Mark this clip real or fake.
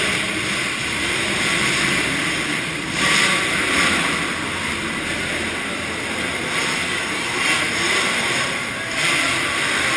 real